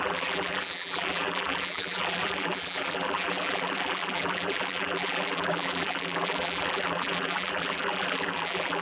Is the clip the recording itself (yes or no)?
no